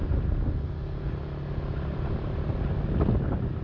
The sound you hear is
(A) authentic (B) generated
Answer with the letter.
A